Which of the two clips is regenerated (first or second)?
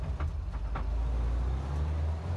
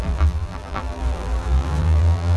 second